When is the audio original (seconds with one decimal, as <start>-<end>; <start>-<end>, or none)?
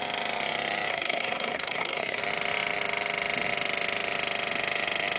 0.0-0.9; 2.2-5.2